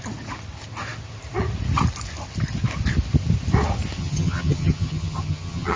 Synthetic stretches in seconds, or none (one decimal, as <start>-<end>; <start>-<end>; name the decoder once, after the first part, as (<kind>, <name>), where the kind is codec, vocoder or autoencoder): 4.0-5.8 (vocoder, HiFi-GAN)